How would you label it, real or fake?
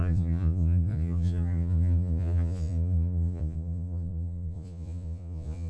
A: fake